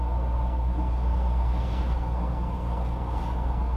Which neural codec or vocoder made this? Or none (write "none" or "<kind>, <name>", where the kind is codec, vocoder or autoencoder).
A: codec, SNAC